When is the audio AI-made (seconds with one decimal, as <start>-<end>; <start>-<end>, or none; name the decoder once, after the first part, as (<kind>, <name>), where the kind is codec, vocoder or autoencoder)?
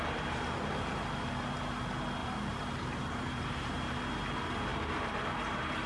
2.2-3.8 (vocoder, BigVGAN v2); 4.7-5.4